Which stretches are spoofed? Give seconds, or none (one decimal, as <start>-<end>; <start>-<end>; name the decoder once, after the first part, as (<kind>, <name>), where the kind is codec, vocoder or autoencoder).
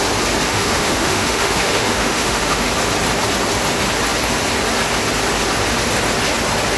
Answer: 0.5-2.7 (autoencoder, DAC-VAE)